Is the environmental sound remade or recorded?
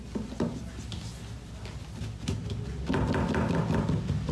recorded